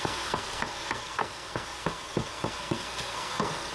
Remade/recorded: remade